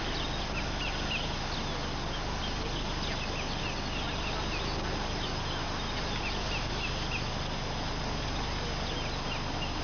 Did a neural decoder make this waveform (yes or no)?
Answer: no